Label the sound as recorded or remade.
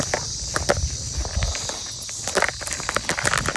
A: recorded